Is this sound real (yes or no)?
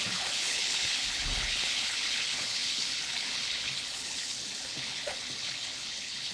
no